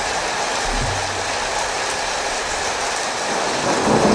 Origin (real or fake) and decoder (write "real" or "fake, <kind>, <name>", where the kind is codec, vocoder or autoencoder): real